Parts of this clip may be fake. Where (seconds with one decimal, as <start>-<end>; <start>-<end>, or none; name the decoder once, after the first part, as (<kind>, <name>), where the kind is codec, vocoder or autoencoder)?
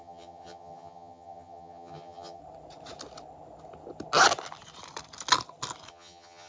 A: 0.0-2.4 (vocoder, HiFi-GAN); 5.9-6.5